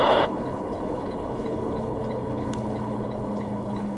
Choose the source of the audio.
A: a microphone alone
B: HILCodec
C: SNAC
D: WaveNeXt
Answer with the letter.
B